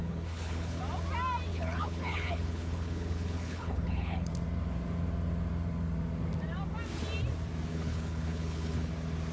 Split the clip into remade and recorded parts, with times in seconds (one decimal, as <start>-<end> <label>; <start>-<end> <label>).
0.0-0.8 remade; 0.8-1.5 recorded; 1.5-4.3 remade; 4.3-7.7 recorded; 7.7-8.9 remade; 8.9-9.3 recorded